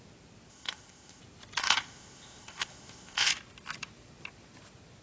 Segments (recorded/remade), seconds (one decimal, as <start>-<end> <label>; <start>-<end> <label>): 0.0-0.5 recorded; 0.5-1.2 remade; 1.2-1.6 recorded; 1.6-3.3 remade; 3.3-5.0 recorded